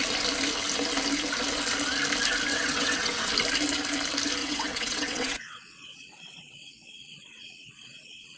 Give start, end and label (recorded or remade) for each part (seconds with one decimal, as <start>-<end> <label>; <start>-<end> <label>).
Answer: 0.0-2.5 recorded; 2.5-3.3 remade; 3.3-4.4 recorded; 4.4-8.4 remade